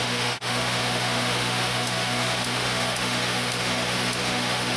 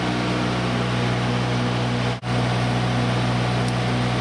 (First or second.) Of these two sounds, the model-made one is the first